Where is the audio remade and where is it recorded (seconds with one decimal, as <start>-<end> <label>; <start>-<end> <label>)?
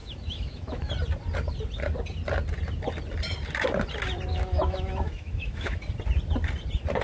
0.0-0.9 remade; 0.9-4.3 recorded; 4.3-5.8 remade; 5.8-7.0 recorded